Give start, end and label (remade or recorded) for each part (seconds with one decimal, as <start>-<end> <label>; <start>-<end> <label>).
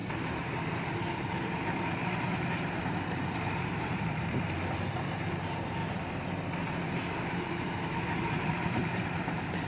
0.0-0.9 recorded; 0.9-5.8 remade; 5.8-7.3 recorded; 7.3-9.7 remade